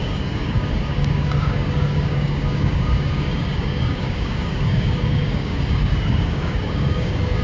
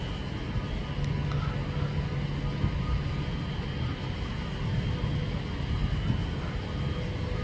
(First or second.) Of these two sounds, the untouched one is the second